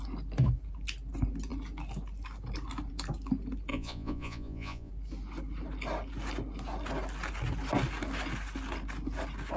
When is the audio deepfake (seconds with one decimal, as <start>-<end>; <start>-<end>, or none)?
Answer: 3.7-4.9